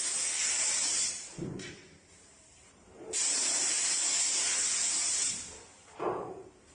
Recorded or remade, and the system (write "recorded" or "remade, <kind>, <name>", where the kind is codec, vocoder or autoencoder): remade, vocoder, BigVGAN v2